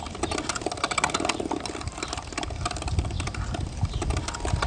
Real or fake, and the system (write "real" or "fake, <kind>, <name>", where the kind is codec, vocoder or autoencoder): real